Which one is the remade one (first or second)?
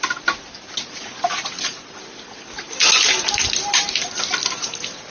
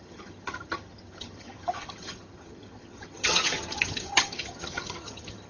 second